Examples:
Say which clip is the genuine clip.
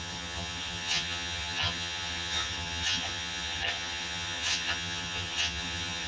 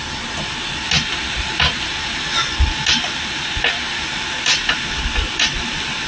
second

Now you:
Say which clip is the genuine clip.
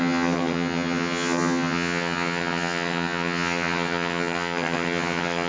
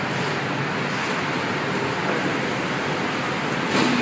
second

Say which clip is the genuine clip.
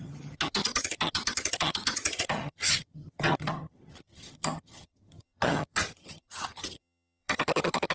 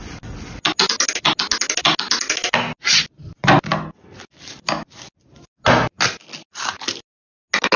second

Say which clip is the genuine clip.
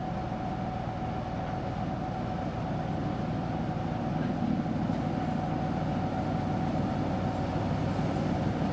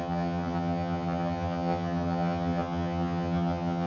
first